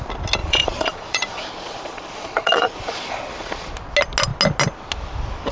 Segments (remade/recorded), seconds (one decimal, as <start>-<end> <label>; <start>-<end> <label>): 0.0-0.4 recorded; 0.4-3.7 remade; 3.7-5.5 recorded